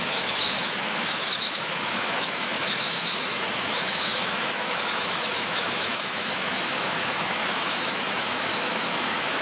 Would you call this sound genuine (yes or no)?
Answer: no